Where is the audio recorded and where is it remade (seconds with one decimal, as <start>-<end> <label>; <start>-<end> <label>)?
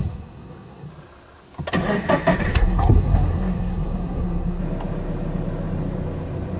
0.0-0.9 remade; 0.9-2.5 recorded; 2.5-4.6 remade; 4.6-6.6 recorded